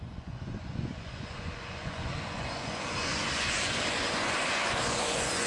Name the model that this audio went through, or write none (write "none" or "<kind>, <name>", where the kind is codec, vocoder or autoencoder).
vocoder, Vocos